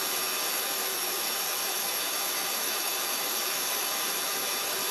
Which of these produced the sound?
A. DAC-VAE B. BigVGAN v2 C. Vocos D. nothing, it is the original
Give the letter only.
A